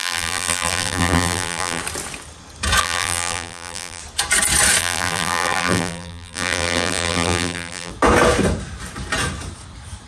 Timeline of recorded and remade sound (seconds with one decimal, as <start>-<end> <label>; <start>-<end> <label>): 0.0-1.8 remade; 1.8-2.8 recorded; 2.8-4.0 remade; 4.0-4.8 recorded; 4.8-7.9 remade; 7.9-10.1 recorded